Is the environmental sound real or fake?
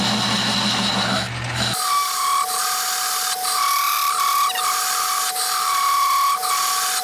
real